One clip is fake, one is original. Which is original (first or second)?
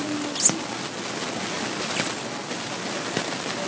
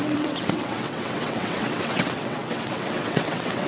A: first